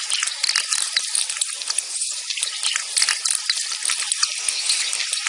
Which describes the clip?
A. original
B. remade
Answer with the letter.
A